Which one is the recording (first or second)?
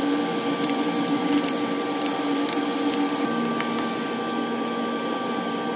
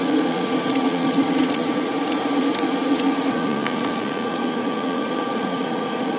first